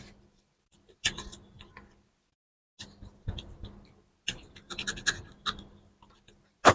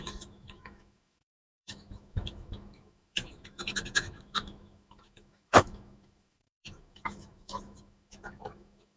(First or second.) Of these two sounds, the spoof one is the second